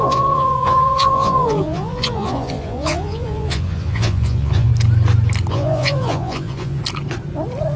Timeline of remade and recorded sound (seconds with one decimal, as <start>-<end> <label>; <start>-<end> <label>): 0.0-4.7 remade; 4.7-5.5 recorded; 5.5-6.8 remade; 6.8-7.8 recorded